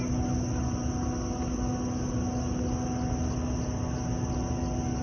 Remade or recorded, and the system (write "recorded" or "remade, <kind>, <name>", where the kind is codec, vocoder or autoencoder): recorded